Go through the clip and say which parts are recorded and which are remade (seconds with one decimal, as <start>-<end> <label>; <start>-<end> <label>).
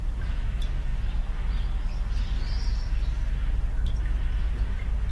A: 0.0-5.1 recorded